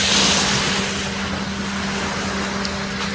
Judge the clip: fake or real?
real